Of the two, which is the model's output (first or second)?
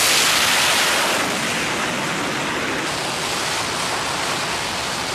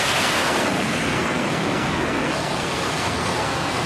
second